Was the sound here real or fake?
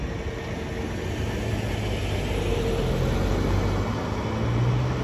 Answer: real